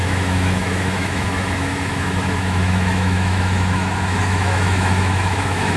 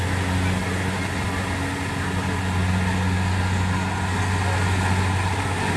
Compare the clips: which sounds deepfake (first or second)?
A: first